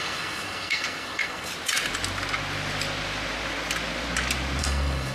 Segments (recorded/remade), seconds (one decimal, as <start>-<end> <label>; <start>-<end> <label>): 0.0-1.5 remade; 1.5-4.6 recorded; 4.6-5.1 remade